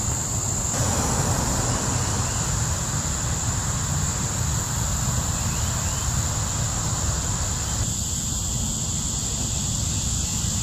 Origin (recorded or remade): recorded